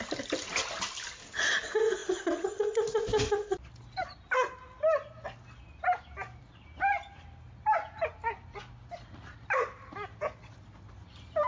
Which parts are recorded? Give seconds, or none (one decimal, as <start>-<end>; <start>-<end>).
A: 0.0-11.5